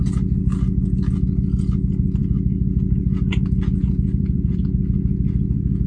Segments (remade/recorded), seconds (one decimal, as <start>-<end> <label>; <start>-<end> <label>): 0.0-3.8 recorded; 3.8-4.6 remade; 4.6-5.9 recorded